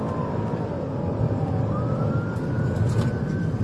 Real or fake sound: fake